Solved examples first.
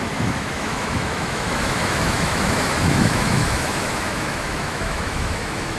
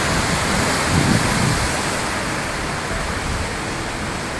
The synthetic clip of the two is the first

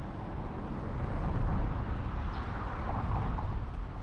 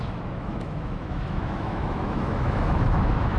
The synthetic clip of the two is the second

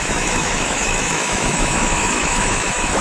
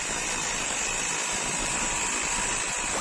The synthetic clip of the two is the first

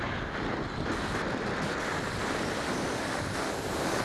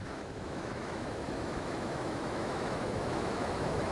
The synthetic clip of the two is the second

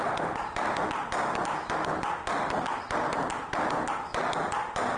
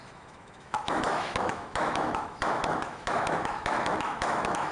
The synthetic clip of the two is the second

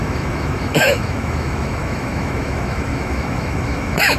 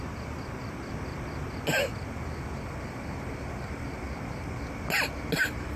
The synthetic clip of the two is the first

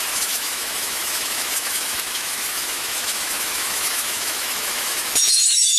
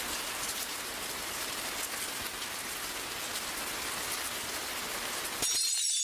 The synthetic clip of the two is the first